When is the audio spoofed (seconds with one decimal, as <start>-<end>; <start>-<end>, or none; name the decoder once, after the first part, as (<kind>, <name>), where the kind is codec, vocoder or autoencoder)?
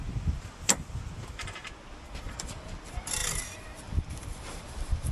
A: 1.2-1.6 (vocoder, BigVGAN v2); 2.2-3.2; 4.0-5.1